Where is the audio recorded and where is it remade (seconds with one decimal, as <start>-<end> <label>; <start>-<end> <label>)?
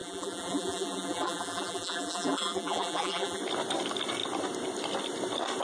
0.0-3.4 remade; 3.4-5.6 recorded